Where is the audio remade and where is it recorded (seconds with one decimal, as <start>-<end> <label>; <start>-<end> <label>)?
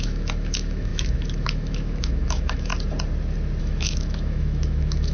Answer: 0.0-2.7 remade; 2.7-3.6 recorded; 3.6-5.1 remade